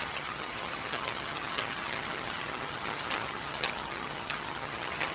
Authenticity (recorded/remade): remade